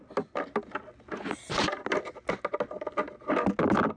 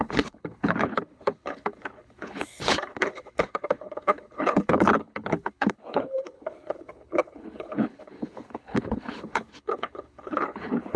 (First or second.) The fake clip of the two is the second